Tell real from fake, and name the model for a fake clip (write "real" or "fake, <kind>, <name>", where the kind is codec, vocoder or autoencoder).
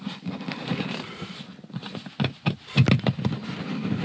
real